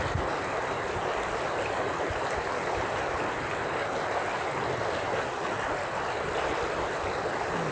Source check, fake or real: real